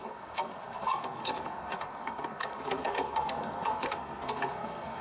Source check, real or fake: fake